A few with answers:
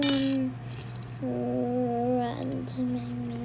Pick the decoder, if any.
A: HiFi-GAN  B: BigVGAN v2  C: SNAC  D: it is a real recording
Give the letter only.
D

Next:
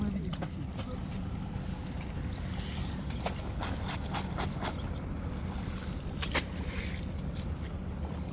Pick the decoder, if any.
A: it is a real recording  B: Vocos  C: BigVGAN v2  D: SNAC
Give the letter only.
A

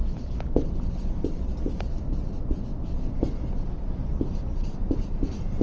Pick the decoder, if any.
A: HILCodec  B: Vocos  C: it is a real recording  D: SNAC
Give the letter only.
C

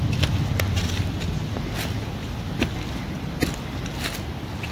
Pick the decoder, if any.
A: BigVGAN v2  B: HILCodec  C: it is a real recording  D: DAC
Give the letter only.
C